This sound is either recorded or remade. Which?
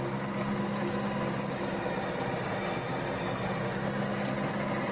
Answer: recorded